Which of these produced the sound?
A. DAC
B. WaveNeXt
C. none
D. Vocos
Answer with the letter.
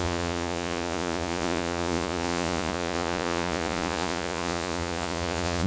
D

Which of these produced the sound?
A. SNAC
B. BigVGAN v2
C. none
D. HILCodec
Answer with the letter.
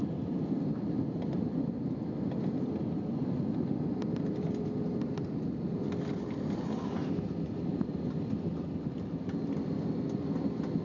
C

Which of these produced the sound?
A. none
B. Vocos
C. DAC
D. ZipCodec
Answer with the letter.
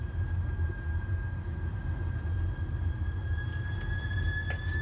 A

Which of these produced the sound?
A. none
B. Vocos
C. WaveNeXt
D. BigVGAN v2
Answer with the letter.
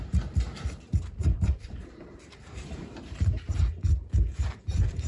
D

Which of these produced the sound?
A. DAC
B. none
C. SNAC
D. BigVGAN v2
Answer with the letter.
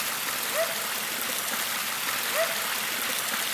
B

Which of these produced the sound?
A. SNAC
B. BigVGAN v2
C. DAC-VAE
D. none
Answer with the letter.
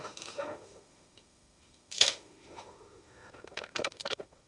C